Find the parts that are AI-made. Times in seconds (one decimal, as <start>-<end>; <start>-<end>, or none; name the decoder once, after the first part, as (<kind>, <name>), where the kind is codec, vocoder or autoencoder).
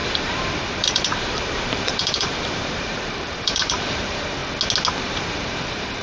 0.0-4.4 (vocoder, BigVGAN v2); 5.0-6.0